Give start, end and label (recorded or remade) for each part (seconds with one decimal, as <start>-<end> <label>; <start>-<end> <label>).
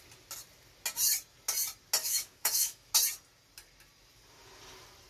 0.0-2.0 recorded; 2.0-2.9 remade; 2.9-5.1 recorded